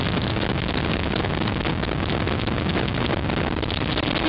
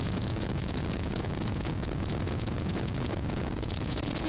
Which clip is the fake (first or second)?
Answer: second